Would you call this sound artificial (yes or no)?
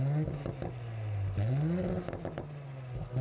no